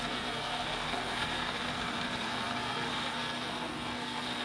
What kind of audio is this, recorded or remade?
remade